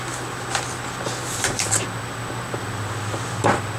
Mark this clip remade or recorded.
recorded